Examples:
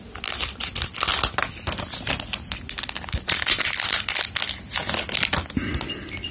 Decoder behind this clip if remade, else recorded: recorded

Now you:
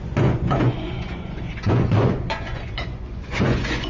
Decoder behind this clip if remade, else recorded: remade, vocoder, Vocos